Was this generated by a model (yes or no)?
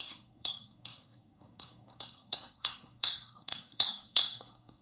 yes